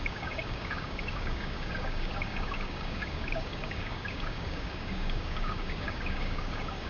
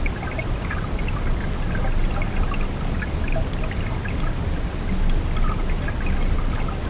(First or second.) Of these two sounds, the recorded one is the second